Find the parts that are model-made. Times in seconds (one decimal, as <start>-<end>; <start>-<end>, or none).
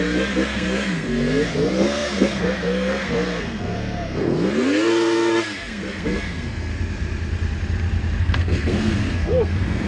0.0-6.7; 8.2-9.9